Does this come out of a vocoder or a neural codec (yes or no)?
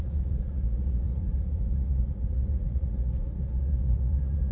yes